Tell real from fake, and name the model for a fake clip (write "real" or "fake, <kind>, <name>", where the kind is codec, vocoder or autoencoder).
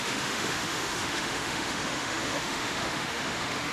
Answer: fake, autoencoder, DAC-VAE